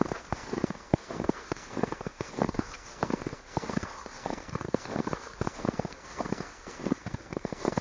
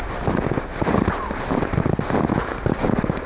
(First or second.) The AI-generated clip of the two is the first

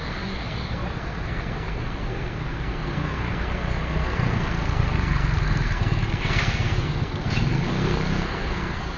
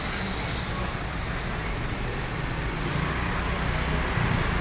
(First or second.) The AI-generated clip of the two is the first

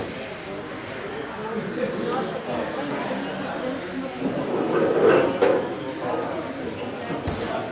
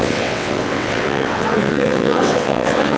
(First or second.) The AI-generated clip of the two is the second